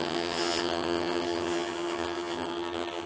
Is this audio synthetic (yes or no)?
yes